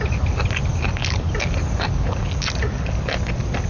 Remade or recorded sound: recorded